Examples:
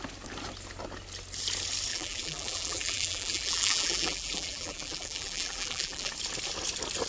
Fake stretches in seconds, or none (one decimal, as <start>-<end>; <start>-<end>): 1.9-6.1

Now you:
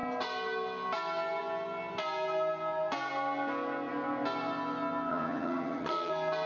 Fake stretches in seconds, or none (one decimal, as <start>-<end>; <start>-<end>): 5.1-6.1

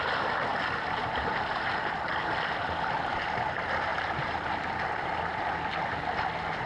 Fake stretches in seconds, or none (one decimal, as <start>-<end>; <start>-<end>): none

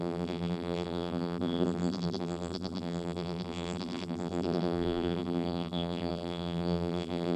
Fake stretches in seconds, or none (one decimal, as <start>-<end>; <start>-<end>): 0.0-7.4